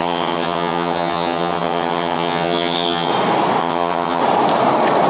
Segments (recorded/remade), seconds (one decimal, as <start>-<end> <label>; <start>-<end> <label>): 0.0-3.1 remade; 3.1-3.6 recorded; 3.6-4.2 remade; 4.2-5.1 recorded